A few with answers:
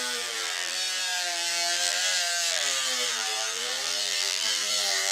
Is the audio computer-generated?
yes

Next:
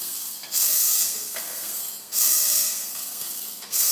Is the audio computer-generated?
yes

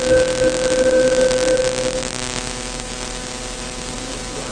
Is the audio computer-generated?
no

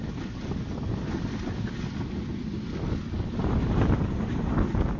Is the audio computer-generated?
no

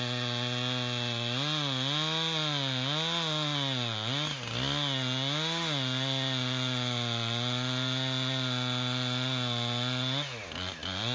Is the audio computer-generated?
no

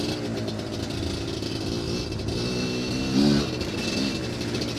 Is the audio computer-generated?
no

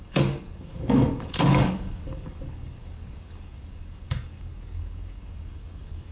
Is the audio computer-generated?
yes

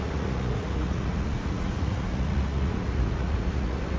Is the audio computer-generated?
yes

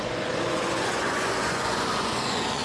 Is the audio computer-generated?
yes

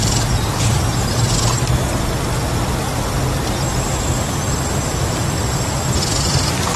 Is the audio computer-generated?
yes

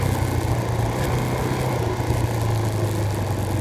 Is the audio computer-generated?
no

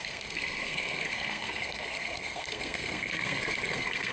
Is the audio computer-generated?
yes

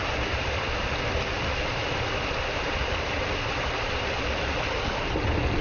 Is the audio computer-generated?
yes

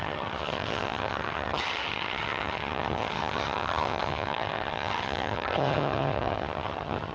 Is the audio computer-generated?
yes